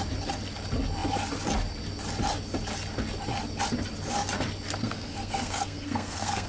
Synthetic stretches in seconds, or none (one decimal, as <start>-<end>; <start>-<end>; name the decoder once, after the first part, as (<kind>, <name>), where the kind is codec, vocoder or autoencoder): 4.8-6.5 (codec, SNAC)